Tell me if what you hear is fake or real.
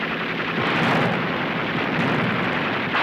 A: real